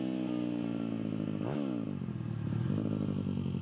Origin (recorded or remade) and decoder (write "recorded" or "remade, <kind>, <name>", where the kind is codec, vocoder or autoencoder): recorded